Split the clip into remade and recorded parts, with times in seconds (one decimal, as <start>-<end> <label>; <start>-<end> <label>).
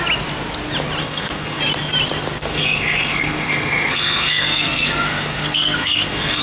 0.0-1.0 recorded; 1.0-1.6 remade; 1.6-2.4 recorded; 2.4-6.4 remade